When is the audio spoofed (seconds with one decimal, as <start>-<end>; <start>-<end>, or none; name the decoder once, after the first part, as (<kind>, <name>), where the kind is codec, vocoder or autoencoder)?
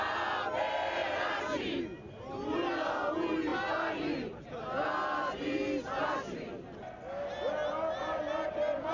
none